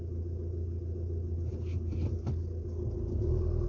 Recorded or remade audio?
recorded